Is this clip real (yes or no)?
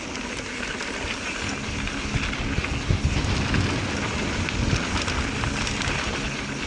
yes